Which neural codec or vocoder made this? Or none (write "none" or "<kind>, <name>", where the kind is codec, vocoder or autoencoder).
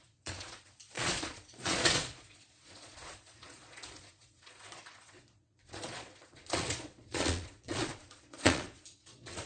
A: vocoder, Vocos